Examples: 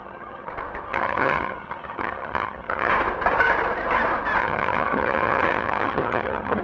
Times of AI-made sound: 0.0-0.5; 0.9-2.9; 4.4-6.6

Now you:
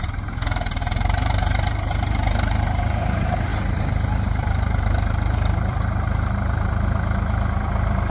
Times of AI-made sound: 0.0-8.1

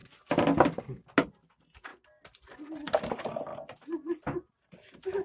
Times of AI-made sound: none

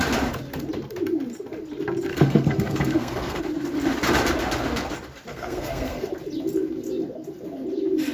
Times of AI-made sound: 2.1-3.4; 5.3-6.1

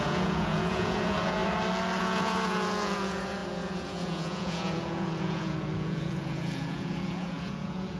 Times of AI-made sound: 0.0-1.4; 2.0-8.0

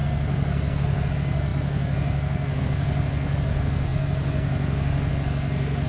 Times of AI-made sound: 0.0-5.9